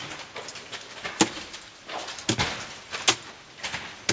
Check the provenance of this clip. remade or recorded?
recorded